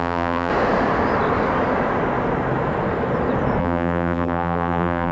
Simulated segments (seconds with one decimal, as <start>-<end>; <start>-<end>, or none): 0.0-0.5; 3.6-5.1